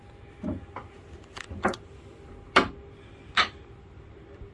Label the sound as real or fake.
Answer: real